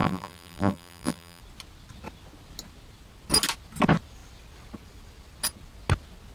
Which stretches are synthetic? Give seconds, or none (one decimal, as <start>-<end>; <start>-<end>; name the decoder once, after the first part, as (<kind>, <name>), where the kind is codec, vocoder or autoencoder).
0.0-1.4 (vocoder, BigVGAN v2)